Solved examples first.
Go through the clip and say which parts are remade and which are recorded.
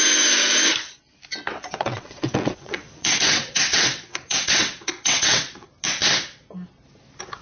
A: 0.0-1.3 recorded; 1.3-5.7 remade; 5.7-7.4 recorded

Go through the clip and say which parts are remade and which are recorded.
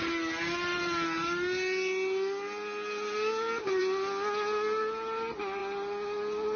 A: 0.0-6.6 recorded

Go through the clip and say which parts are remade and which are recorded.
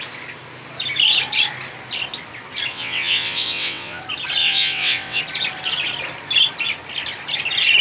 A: 0.0-2.7 recorded; 2.7-4.0 remade; 4.0-4.4 recorded; 4.4-5.2 remade; 5.2-7.8 recorded